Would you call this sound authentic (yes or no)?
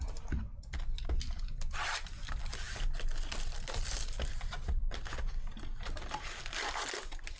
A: yes